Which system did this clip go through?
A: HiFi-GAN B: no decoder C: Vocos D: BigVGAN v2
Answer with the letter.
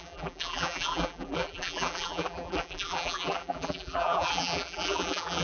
D